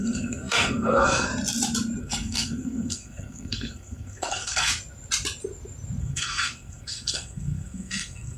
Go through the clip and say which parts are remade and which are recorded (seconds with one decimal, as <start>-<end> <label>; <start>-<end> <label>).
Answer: 0.0-1.3 remade; 1.3-2.0 recorded; 2.0-4.7 remade; 4.7-6.0 recorded; 6.0-8.4 remade